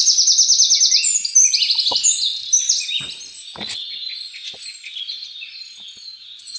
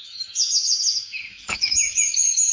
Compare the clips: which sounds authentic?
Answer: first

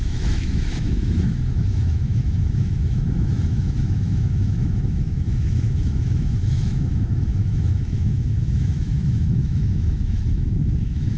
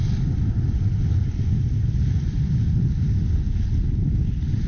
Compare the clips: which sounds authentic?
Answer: second